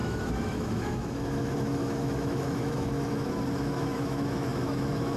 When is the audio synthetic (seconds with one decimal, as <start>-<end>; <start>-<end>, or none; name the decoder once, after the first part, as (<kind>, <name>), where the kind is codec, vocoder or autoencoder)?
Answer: 0.0-5.2 (autoencoder, DAC-VAE)